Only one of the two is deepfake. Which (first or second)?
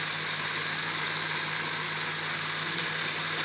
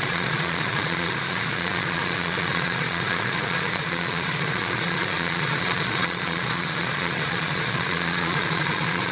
second